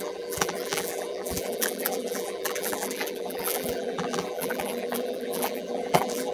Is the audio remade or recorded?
remade